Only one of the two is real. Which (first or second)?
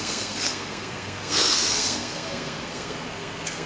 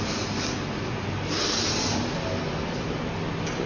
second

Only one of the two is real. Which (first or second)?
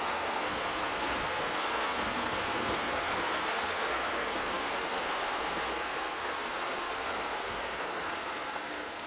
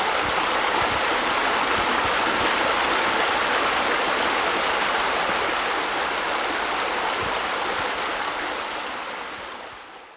second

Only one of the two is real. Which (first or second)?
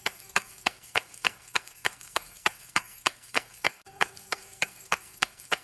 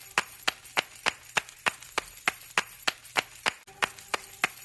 second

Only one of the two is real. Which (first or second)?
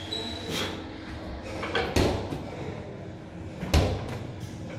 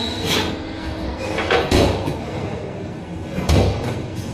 first